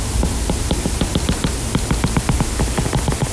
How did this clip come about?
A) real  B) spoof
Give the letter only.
A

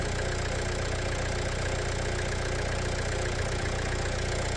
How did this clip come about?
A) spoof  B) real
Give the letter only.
B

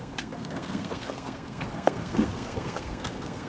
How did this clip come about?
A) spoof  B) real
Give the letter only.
A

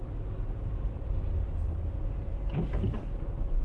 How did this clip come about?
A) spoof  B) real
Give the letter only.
B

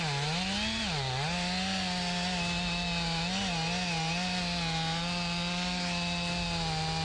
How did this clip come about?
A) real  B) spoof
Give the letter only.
A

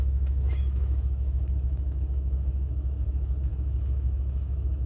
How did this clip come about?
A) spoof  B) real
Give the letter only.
A